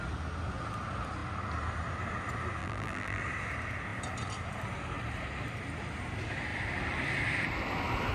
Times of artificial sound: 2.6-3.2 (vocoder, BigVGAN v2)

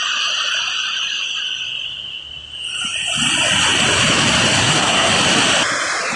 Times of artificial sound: 4.6-5.1 (codec, SNAC)

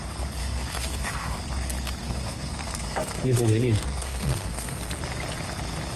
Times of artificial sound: 0.4-1.4 (codec, SNAC); 2.0-4.8

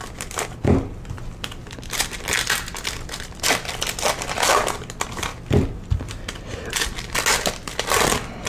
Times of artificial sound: none